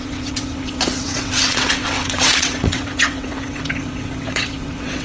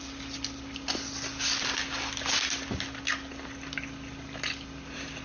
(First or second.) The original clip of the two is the second